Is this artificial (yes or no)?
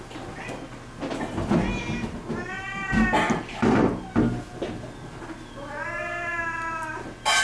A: no